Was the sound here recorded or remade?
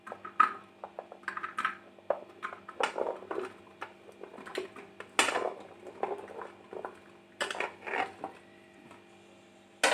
recorded